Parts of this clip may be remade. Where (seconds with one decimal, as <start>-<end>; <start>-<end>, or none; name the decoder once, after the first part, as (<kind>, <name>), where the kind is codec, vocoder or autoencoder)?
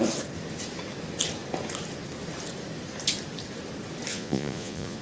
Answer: 4.1-5.0 (vocoder, Vocos)